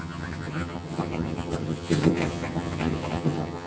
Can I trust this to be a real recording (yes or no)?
no